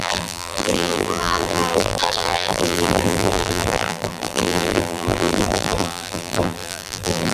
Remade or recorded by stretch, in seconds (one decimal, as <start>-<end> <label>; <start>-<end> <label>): 0.0-7.3 remade

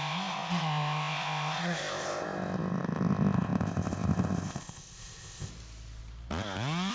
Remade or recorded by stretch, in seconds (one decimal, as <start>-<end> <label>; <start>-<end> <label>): 0.0-5.5 remade; 5.5-6.9 recorded

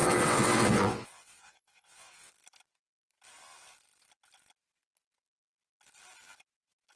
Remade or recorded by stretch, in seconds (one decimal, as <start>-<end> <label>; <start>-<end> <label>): 0.0-2.3 remade; 2.3-7.0 recorded

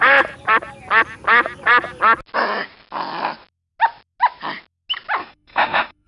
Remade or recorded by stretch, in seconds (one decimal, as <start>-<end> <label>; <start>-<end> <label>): 0.0-5.2 recorded; 5.2-6.1 remade

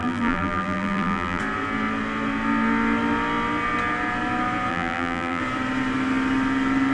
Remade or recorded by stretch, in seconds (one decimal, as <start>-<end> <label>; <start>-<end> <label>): 0.0-1.4 remade; 1.4-4.7 recorded; 4.7-5.4 remade; 5.4-6.9 recorded

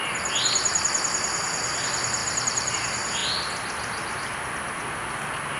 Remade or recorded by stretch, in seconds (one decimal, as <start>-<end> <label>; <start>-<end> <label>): 0.0-2.2 recorded; 2.2-2.7 remade; 2.7-5.6 recorded

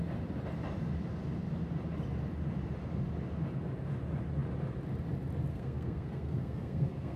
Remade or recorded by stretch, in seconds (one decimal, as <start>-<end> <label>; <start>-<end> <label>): 0.0-5.5 recorded; 5.5-7.2 remade

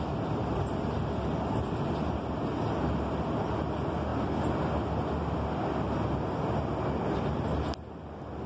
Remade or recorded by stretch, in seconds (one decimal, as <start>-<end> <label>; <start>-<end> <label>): 0.0-0.4 recorded; 0.4-1.0 remade; 1.0-8.5 recorded